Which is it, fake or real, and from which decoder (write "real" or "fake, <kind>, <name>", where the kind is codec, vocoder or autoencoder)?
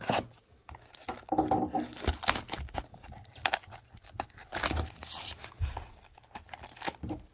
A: real